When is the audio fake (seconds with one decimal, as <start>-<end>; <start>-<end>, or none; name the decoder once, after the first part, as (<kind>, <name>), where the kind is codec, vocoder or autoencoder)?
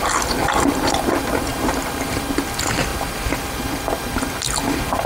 1.5-2.2 (vocoder, BigVGAN v2)